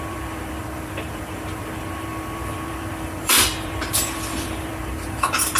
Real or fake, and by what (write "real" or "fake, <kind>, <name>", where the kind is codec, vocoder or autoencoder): fake, vocoder, BigVGAN v2